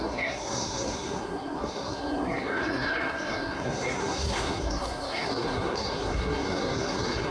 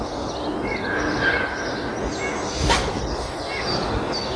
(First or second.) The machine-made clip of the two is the first